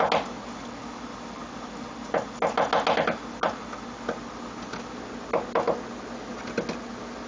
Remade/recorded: recorded